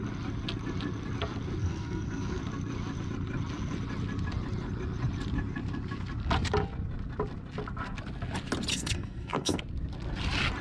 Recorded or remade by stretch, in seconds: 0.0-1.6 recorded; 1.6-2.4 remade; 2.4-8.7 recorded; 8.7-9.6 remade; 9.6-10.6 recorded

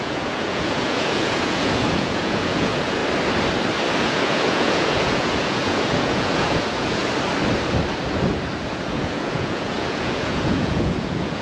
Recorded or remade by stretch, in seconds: 0.0-3.0 remade; 3.0-4.0 recorded; 4.0-7.0 remade; 7.0-8.7 recorded; 8.7-11.4 remade